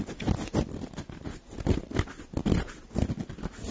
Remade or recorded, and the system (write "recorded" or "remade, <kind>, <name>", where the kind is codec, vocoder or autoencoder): recorded